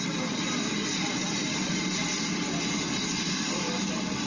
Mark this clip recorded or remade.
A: recorded